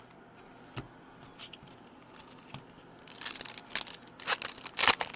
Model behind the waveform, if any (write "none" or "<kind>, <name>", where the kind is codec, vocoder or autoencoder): none